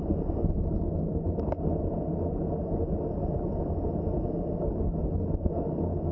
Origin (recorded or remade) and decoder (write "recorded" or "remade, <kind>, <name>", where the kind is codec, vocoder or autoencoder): recorded